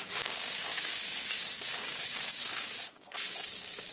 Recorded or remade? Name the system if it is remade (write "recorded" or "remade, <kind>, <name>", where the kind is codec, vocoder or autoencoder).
remade, codec, DAC